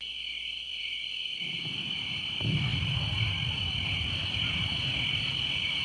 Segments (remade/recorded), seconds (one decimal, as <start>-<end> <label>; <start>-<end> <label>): 0.0-5.8 recorded

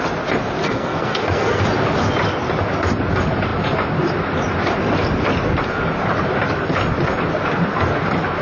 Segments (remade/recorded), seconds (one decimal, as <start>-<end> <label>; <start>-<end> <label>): 0.0-0.6 recorded; 0.6-1.6 remade; 1.6-8.4 recorded

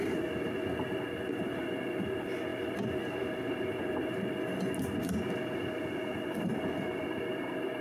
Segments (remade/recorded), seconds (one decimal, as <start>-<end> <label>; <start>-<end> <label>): 0.0-7.8 recorded

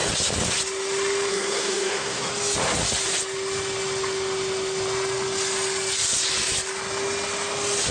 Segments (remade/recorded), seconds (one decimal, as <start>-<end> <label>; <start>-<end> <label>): 0.0-1.3 recorded; 1.3-2.3 remade; 2.3-7.9 recorded

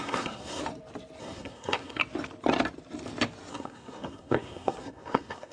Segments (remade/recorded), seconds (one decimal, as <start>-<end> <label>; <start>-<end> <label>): 0.0-0.6 remade; 0.6-1.2 recorded; 1.2-2.0 remade; 2.0-3.5 recorded; 3.5-5.5 remade

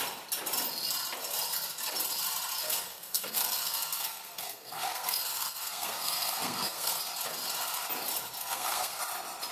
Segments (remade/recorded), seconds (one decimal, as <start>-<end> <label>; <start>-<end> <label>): 0.0-2.6 recorded; 2.6-7.0 remade; 7.0-8.4 recorded; 8.4-9.0 remade; 9.0-9.5 recorded